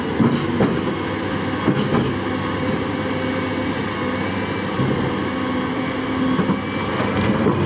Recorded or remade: recorded